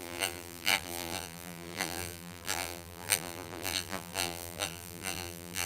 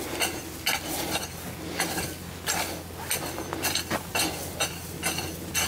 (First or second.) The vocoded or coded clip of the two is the first